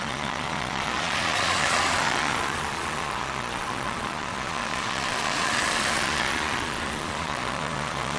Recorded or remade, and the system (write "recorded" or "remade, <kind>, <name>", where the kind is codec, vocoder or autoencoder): remade, vocoder, Vocos